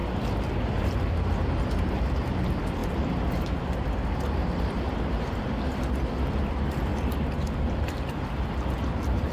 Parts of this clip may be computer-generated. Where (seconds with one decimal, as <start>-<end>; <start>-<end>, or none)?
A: none